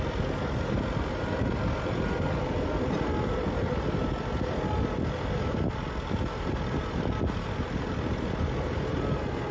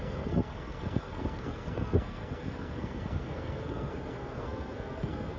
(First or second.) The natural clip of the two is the first